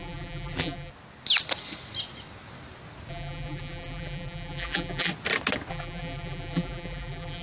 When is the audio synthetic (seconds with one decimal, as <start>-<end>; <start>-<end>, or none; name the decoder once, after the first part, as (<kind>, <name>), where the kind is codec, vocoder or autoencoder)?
0.0-0.9 (vocoder, BigVGAN v2); 3.1-5.1; 5.7-7.4